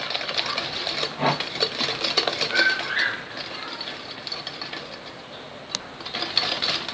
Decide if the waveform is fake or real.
real